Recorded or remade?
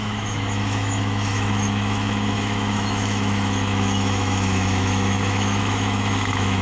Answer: remade